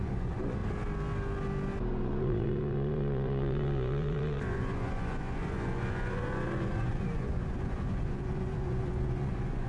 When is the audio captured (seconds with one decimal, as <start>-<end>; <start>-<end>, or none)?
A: 0.6-1.9